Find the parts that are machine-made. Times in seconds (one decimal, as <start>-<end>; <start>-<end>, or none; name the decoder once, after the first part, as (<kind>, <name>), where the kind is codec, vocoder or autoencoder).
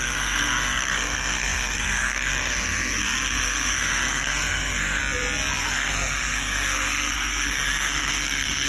0.0-5.0 (codec, SNAC); 5.6-8.7